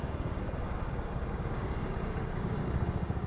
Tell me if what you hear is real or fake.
fake